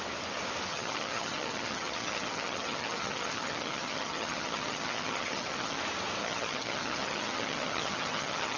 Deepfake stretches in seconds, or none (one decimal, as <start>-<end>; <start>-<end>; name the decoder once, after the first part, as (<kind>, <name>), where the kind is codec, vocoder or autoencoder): 0.7-5.8 (vocoder, HiFi-GAN); 6.2-8.6